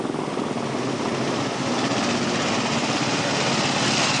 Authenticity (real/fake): real